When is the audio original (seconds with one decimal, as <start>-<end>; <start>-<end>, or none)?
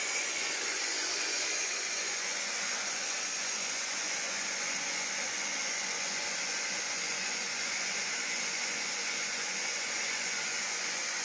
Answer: none